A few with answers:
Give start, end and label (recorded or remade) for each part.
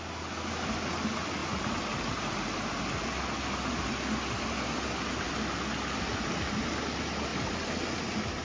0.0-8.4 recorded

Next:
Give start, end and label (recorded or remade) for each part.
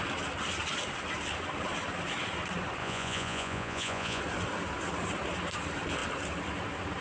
0.0-2.8 recorded; 2.8-4.2 remade; 4.2-7.0 recorded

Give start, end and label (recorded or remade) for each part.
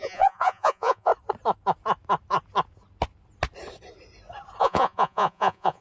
0.0-1.1 remade; 1.1-4.6 recorded; 4.6-5.8 remade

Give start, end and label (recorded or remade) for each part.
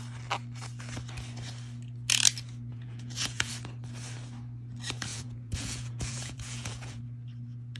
0.0-2.7 recorded; 2.7-3.5 remade; 3.5-5.1 recorded; 5.1-7.0 remade; 7.0-7.8 recorded